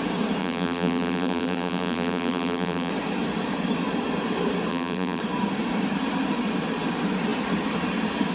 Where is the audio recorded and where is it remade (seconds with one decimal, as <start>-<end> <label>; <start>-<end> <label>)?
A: 0.0-0.4 recorded; 0.4-2.9 remade; 2.9-4.7 recorded; 4.7-5.2 remade; 5.2-8.3 recorded